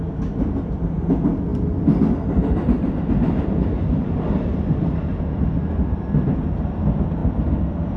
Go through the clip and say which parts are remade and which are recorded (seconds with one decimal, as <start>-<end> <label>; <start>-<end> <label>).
0.0-8.0 recorded